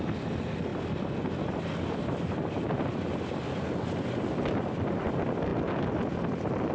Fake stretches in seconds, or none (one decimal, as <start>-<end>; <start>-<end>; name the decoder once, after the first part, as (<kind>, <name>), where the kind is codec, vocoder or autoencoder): none